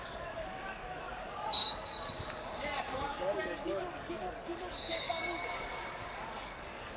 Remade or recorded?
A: remade